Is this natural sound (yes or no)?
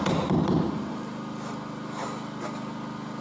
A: yes